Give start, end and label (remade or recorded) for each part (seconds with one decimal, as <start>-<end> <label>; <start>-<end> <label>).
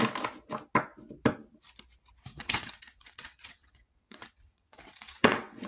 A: 0.0-2.3 recorded; 2.3-5.7 remade